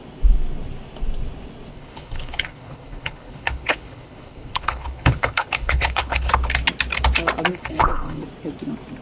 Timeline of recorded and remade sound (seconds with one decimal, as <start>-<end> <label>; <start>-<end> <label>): 0.0-1.7 recorded; 1.7-6.3 remade; 6.3-7.5 recorded; 7.5-8.2 remade; 8.2-9.0 recorded